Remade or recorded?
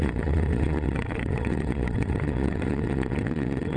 remade